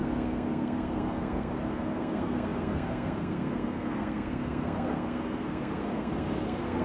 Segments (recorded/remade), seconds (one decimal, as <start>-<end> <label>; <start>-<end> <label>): 0.0-6.8 remade